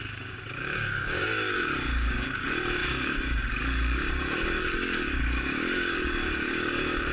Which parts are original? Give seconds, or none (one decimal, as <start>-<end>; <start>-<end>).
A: none

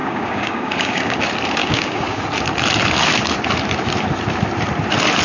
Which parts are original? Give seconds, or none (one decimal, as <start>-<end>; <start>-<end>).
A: 1.2-1.6; 2.2-5.2

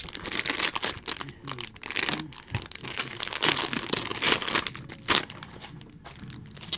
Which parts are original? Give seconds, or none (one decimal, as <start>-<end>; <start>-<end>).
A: 0.0-2.8; 3.5-6.8

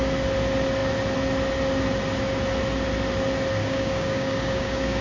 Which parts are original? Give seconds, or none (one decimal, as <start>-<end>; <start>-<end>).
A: 0.0-3.6

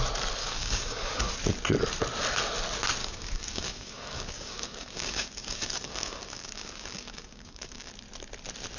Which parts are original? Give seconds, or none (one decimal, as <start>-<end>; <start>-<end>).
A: 0.0-0.4; 1.3-3.0; 7.9-8.8

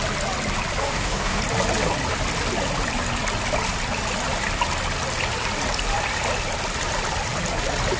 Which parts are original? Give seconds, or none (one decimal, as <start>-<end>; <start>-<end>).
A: 0.0-0.8; 1.4-8.0

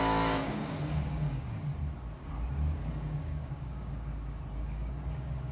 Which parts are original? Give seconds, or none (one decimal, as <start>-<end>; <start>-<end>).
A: 1.7-2.9; 4.1-4.6